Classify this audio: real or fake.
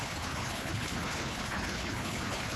fake